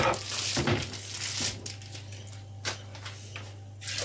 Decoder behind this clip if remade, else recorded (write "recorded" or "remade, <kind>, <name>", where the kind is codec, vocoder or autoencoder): recorded